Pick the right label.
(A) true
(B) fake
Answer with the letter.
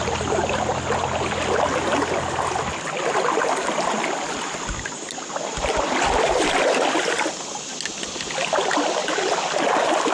A